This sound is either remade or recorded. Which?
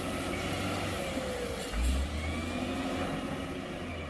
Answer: recorded